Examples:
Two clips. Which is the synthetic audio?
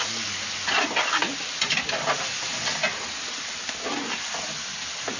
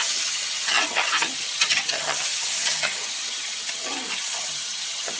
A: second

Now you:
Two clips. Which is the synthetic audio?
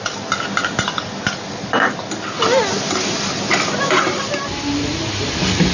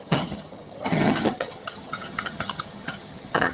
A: second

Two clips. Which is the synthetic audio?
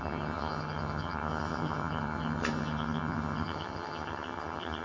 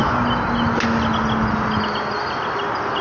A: first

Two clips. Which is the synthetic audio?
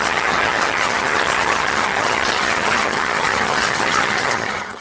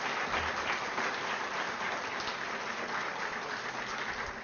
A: first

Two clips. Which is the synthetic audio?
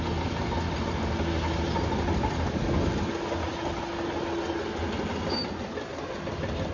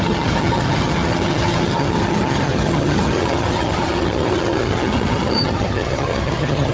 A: second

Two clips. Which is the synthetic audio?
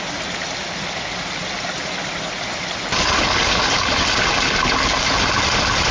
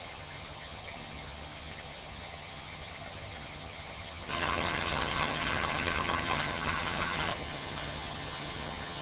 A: second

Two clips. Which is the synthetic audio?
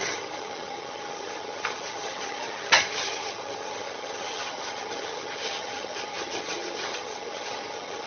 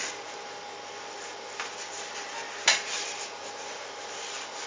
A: first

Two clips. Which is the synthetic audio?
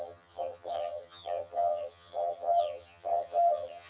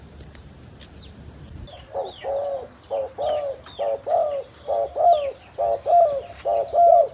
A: first